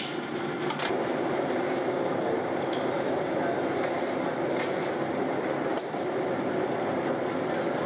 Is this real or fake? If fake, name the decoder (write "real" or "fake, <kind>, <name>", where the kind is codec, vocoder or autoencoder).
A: real